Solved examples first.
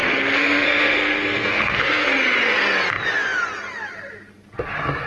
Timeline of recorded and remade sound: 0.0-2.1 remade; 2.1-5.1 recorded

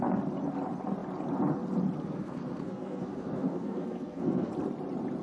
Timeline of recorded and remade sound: 0.0-2.0 recorded; 2.0-4.5 remade; 4.5-5.2 recorded

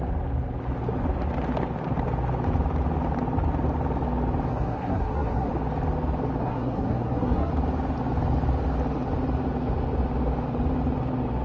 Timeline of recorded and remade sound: 0.0-4.5 recorded; 4.5-5.5 remade; 5.5-6.4 recorded; 6.4-7.5 remade; 7.5-11.4 recorded

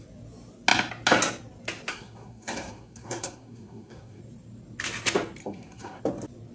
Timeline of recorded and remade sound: 0.0-1.9 recorded; 1.9-4.2 remade; 4.2-5.4 recorded; 5.4-6.0 remade; 6.0-6.5 recorded